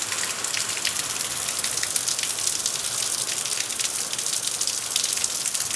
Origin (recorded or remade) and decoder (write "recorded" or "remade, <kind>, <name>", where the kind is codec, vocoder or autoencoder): recorded